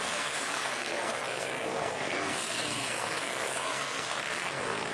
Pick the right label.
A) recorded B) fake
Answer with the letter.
B